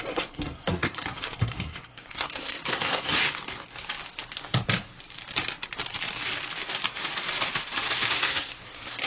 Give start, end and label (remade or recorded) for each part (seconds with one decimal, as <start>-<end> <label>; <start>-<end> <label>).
0.0-3.2 remade; 3.2-8.1 recorded; 8.1-9.1 remade